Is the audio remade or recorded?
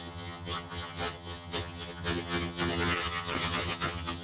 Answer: remade